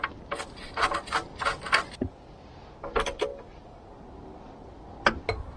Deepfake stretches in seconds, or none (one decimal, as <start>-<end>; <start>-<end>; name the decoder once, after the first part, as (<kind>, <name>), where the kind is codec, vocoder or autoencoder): none

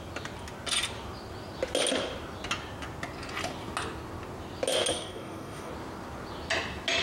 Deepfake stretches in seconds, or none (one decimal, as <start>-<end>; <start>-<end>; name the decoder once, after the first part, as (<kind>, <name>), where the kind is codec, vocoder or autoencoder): 4.9-5.7 (codec, DAC)